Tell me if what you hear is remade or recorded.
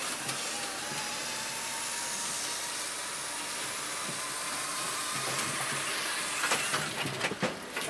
recorded